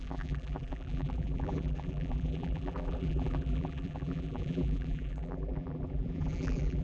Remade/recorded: remade